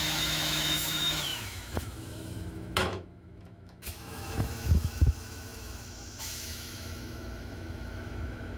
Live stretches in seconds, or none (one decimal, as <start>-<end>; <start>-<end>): none